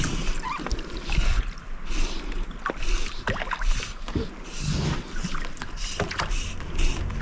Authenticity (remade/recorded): recorded